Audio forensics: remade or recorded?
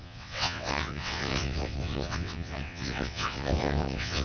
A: remade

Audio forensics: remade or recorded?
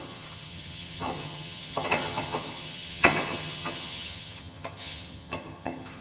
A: remade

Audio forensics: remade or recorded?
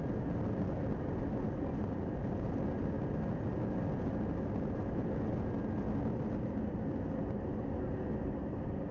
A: recorded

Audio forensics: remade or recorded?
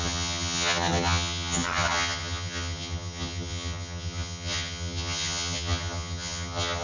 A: remade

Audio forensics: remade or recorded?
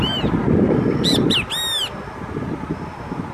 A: recorded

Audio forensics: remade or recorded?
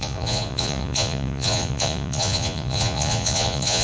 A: remade